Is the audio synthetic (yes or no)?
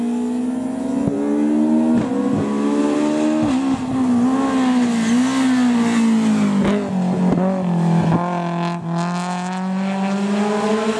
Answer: no